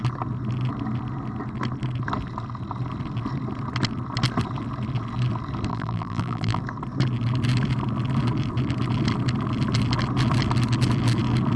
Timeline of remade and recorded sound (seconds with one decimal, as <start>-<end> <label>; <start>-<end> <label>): 0.0-5.7 recorded; 5.7-6.6 remade; 6.6-11.6 recorded